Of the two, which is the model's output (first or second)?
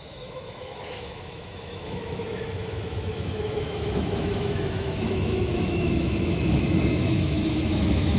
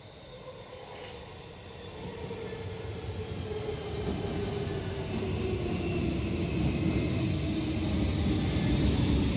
first